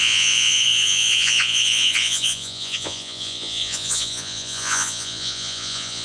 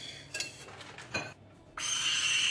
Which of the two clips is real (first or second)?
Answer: second